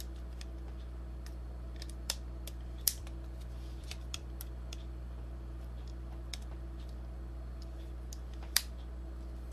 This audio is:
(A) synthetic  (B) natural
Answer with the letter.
A